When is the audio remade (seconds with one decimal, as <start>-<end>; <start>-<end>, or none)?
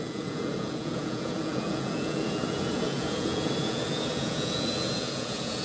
0.0-5.6